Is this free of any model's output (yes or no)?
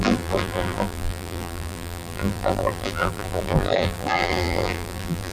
no